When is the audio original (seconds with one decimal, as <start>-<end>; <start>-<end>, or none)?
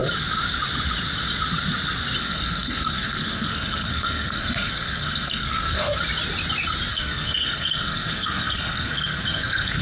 0.0-2.2; 6.0-6.9